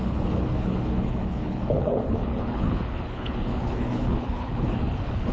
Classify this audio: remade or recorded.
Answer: remade